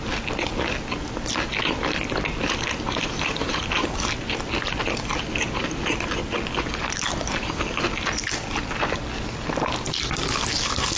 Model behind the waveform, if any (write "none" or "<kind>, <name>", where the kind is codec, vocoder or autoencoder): none